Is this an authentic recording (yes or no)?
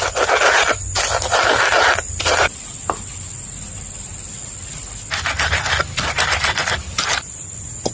yes